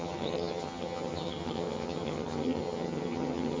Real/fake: fake